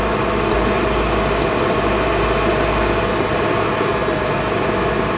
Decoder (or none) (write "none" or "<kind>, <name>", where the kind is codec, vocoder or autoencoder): none